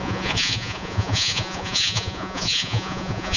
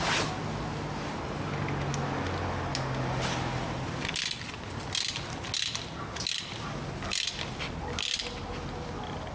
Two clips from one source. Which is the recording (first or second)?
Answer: second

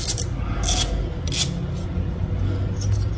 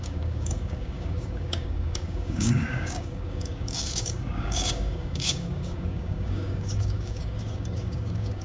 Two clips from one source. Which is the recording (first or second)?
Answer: first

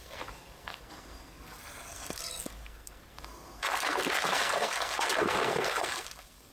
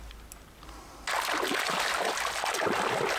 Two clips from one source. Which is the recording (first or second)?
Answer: second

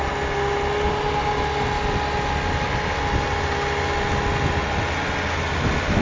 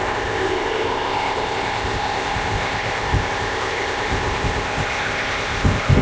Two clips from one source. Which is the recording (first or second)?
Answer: first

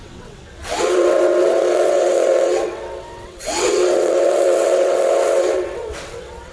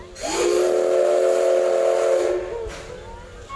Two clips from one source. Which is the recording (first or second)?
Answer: second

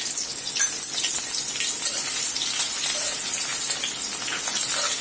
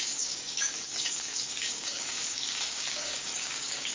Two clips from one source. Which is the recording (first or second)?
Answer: first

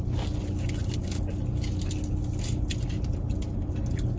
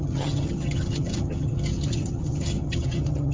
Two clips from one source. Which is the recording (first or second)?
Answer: first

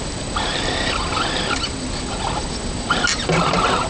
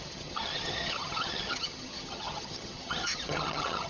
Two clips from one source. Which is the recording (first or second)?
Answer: first